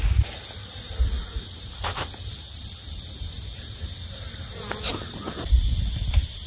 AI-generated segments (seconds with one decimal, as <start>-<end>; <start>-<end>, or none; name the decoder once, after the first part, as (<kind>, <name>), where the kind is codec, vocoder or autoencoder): none